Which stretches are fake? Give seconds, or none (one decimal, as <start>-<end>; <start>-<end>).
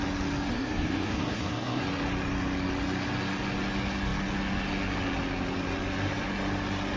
0.5-1.8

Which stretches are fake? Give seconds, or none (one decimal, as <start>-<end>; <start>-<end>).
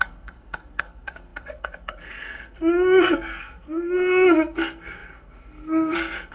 0.0-6.3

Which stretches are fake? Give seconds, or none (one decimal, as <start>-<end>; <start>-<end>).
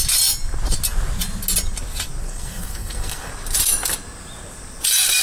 2.2-3.3